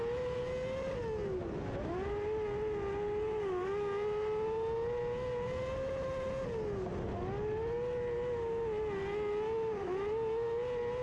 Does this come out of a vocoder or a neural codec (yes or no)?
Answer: no